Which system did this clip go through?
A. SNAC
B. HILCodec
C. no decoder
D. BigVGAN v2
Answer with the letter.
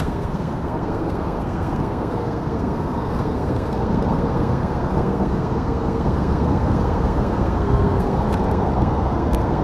A